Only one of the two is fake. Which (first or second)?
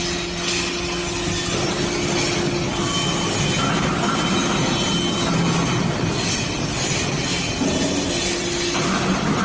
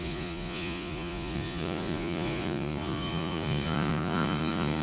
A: second